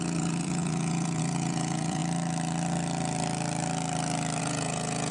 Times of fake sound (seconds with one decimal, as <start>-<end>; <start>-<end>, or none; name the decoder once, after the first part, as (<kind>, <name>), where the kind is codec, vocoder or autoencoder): 0.0-2.0 (vocoder, Vocos); 4.4-5.1

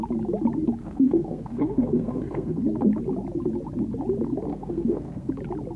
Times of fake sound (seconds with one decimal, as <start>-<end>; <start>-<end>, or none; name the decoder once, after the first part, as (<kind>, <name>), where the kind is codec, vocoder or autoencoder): 0.8-2.6 (codec, SNAC); 4.5-5.3

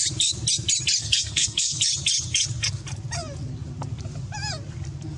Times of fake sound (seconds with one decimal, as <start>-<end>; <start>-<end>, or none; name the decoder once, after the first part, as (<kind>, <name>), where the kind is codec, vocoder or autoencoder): 1.0-1.8 (codec, SNAC)

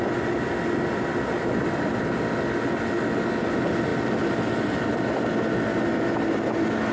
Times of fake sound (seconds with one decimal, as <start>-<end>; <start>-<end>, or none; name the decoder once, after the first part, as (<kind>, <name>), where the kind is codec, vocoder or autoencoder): none

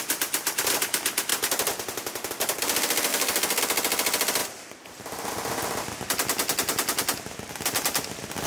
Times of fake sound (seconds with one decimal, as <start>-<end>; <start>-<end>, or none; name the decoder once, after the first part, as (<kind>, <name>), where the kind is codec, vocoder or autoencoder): 3.1-3.6 (codec, SNAC)

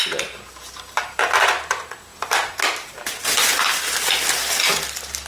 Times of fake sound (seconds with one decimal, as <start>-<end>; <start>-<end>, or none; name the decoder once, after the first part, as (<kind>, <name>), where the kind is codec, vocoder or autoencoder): none

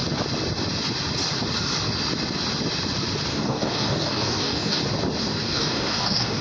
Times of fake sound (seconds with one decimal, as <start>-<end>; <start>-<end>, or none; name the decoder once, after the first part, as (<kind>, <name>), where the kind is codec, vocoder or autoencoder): 3.3-4.8 (codec, DAC); 5.2-6.4